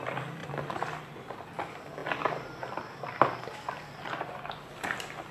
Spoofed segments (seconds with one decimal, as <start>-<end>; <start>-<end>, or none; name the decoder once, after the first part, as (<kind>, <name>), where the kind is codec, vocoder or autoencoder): 0.4-1.4 (vocoder, BigVGAN v2); 2.0-5.3